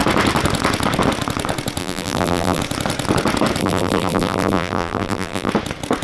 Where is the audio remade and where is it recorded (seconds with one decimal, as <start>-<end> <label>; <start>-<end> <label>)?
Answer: 0.0-1.8 recorded; 1.8-2.6 remade; 2.6-3.6 recorded; 3.6-5.5 remade; 5.5-6.0 recorded